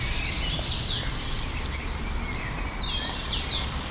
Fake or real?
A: real